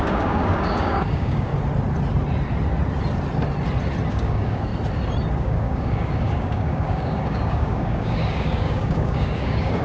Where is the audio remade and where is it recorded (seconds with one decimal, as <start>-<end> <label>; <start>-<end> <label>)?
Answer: 0.0-1.5 remade; 1.5-4.1 recorded; 4.1-4.7 remade; 4.7-5.4 recorded; 5.4-9.8 remade